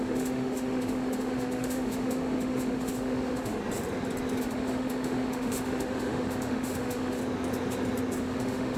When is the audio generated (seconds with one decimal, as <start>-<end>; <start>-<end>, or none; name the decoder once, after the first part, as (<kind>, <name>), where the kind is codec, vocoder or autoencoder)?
0.0-3.6 (autoencoder, DAC-VAE); 4.4-7.2; 8.2-8.8